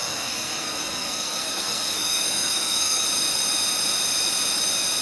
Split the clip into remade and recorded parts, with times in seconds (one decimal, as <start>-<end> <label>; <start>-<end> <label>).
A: 0.0-3.0 remade; 3.0-5.0 recorded